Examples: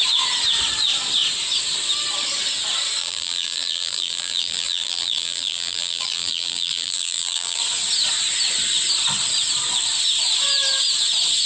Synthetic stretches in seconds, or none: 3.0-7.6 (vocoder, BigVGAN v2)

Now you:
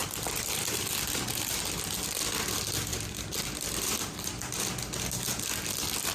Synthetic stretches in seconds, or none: 0.0-0.9 (vocoder, BigVGAN v2); 2.9-4.6